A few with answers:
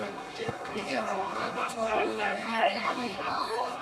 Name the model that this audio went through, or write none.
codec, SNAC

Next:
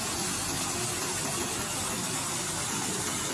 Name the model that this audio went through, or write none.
none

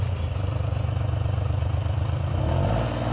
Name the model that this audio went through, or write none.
none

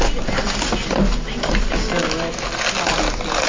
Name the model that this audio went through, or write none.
none